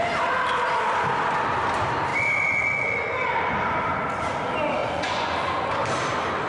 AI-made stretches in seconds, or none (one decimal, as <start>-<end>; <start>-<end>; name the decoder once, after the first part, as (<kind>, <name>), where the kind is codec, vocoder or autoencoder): 4.8-5.6 (vocoder, Vocos)